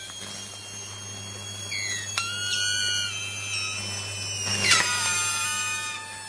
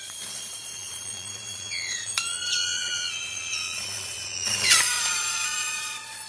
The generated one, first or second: second